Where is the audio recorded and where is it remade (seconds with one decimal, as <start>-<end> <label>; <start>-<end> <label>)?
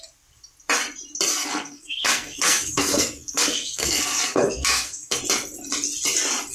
0.0-1.3 recorded; 1.3-5.2 remade; 5.2-6.5 recorded